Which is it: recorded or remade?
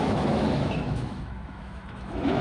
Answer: remade